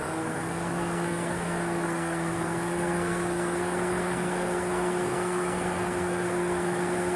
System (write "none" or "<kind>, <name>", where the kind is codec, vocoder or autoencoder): codec, SNAC